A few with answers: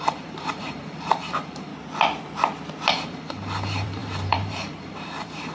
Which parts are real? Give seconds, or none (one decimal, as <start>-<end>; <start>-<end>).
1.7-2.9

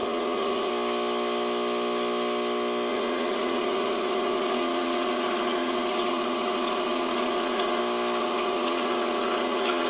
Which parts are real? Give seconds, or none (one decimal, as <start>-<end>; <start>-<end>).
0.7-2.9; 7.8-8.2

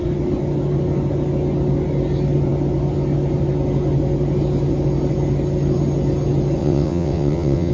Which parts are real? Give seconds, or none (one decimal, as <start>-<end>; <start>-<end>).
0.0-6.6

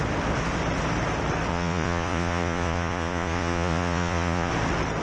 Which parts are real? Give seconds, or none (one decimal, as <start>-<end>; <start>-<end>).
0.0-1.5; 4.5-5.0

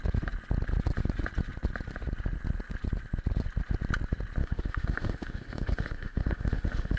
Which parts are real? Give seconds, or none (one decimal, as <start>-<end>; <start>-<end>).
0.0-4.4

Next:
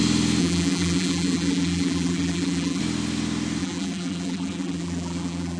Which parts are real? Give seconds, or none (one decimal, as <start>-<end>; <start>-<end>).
0.0-0.4; 2.8-3.6